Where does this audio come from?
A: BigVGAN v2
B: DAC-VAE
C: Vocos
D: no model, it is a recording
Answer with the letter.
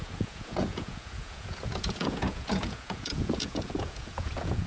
C